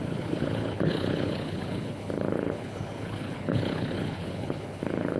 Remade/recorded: remade